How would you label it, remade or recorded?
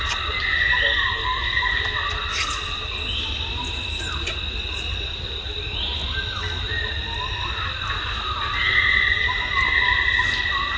recorded